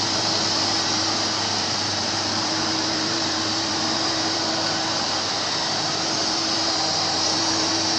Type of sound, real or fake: fake